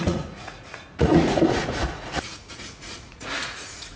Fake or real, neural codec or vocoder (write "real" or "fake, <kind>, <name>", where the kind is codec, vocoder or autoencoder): fake, vocoder, Vocos